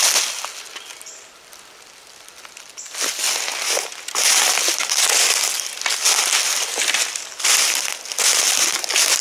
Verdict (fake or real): real